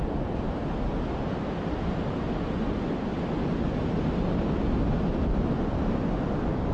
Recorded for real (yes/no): yes